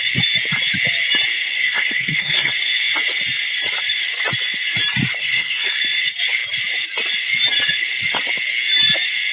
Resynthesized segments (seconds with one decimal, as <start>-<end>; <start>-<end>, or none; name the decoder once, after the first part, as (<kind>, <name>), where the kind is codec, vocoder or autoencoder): 1.5-2.5 (codec, SNAC); 5.2-5.8

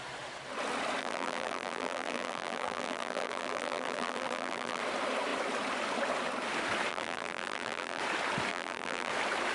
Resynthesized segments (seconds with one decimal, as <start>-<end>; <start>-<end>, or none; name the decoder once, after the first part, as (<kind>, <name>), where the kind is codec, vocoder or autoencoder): 1.0-4.8 (vocoder, BigVGAN v2); 6.9-8.0; 8.5-9.1

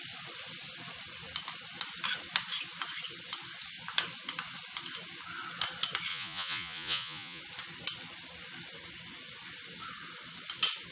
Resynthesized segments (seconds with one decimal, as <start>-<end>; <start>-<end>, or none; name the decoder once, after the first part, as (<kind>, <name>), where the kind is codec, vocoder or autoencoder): 6.1-7.4 (vocoder, Vocos)

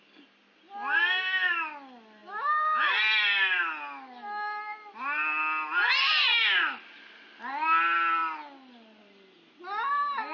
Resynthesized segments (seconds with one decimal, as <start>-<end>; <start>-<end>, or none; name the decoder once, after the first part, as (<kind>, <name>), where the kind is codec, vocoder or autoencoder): none